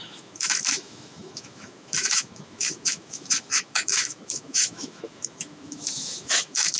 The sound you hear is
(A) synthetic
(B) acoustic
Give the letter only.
A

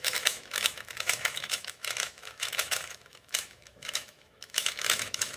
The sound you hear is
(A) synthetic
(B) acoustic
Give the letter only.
A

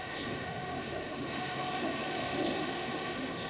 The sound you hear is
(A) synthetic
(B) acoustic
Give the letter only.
A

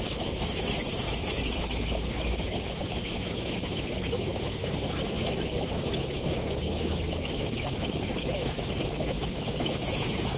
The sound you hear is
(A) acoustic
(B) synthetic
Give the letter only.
B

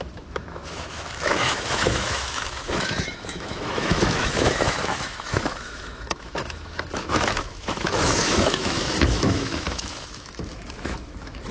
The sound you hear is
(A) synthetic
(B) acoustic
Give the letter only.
A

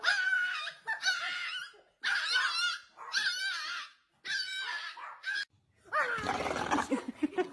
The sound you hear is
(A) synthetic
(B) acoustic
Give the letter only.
B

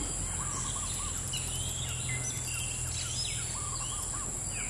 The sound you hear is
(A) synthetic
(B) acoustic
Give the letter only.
B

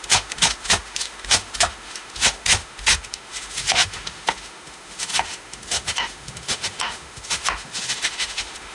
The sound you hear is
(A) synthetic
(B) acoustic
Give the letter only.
A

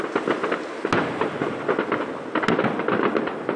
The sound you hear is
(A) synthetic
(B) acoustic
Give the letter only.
B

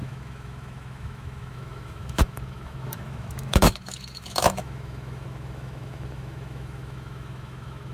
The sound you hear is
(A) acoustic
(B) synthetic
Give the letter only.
B